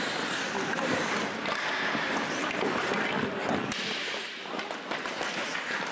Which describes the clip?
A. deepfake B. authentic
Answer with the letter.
B